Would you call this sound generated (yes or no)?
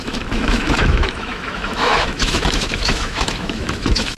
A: yes